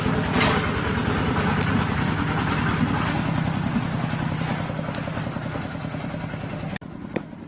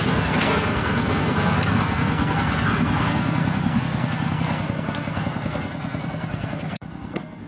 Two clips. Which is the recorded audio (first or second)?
first